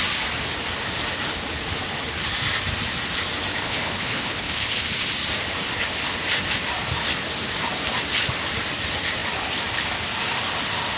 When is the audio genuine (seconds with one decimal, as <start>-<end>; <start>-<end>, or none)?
0.0-3.5; 4.8-11.0